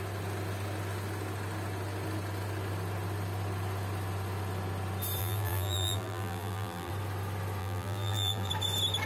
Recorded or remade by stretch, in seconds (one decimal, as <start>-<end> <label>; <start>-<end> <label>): 0.0-5.2 recorded; 5.2-6.9 remade; 6.9-7.6 recorded; 7.6-8.5 remade; 8.5-9.1 recorded